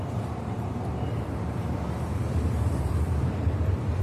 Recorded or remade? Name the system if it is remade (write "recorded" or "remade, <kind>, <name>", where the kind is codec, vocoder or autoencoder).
remade, vocoder, BigVGAN v2